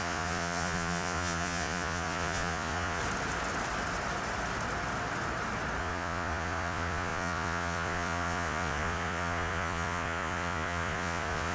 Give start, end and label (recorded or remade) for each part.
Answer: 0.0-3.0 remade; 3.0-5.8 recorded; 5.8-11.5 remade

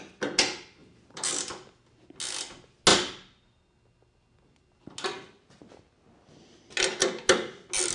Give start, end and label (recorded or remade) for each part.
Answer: 0.0-0.8 recorded; 0.8-1.3 remade; 1.3-7.9 recorded

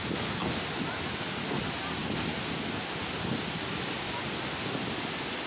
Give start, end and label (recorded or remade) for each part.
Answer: 0.0-5.5 recorded

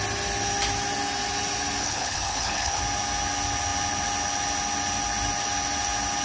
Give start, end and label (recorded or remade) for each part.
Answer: 0.0-1.8 recorded; 1.8-2.8 remade; 2.8-6.2 recorded

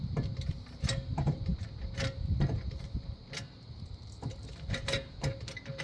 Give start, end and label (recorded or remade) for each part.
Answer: 0.0-5.8 remade

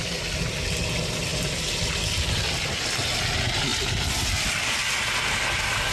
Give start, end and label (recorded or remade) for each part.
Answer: 0.0-5.9 recorded

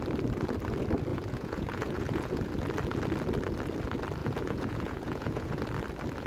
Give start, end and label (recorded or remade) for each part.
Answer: 0.0-1.1 recorded; 1.1-2.5 remade; 2.5-4.2 recorded; 4.2-5.6 remade; 5.6-6.3 recorded